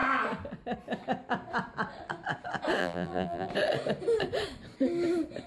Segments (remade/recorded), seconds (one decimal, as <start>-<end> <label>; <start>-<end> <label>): 0.0-2.8 recorded; 2.8-3.5 remade; 3.5-5.5 recorded